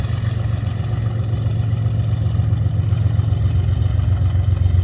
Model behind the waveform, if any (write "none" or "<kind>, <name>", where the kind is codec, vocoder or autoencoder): none